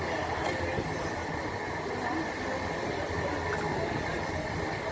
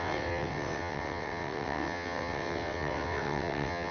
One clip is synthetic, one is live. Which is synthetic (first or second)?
second